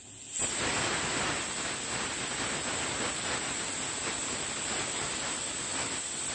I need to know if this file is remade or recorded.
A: recorded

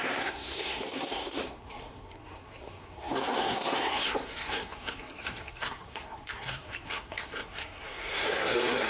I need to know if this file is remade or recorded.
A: remade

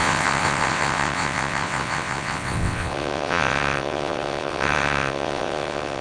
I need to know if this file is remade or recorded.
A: remade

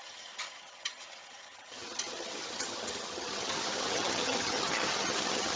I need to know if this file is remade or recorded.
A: remade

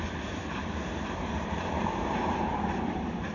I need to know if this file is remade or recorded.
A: remade